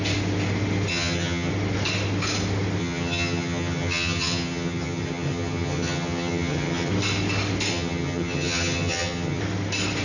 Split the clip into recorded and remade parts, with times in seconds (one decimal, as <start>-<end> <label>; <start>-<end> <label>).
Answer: 0.0-0.9 recorded; 0.9-1.5 remade; 1.5-2.8 recorded; 2.8-6.9 remade; 6.9-7.7 recorded; 7.7-9.4 remade; 9.4-10.0 recorded